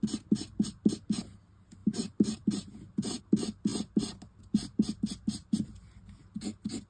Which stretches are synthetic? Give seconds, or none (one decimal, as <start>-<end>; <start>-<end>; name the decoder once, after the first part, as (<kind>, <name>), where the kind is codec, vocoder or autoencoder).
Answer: 1.8-3.2 (vocoder, BigVGAN v2); 5.4-6.2

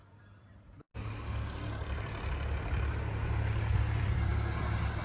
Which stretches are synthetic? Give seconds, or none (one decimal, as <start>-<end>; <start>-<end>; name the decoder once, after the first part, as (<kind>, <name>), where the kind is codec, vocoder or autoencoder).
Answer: 0.0-0.9 (vocoder, BigVGAN v2); 3.9-4.3

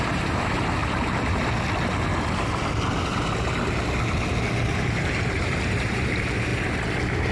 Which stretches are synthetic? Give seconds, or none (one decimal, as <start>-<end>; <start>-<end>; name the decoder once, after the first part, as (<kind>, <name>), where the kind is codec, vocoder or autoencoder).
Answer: 0.0-0.8 (vocoder, BigVGAN v2); 4.7-6.5

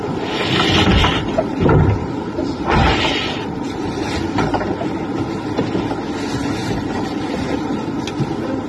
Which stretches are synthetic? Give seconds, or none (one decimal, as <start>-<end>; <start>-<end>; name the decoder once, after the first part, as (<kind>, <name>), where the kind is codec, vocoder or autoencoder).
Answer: 1.0-4.9 (vocoder, BigVGAN v2); 6.6-7.8

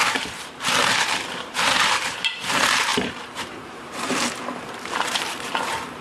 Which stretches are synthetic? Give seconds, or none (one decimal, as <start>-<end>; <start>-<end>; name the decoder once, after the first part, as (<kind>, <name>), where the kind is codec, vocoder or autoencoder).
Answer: 0.0-6.0 (vocoder, BigVGAN v2)